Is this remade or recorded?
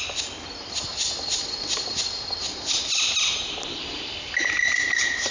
recorded